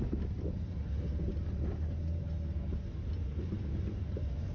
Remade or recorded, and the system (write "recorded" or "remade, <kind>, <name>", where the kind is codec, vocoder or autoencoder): recorded